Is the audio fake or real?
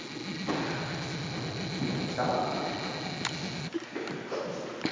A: real